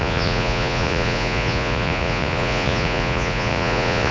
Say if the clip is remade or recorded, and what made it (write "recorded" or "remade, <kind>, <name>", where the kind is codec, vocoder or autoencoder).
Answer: remade, vocoder, Vocos